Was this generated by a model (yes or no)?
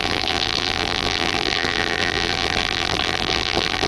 yes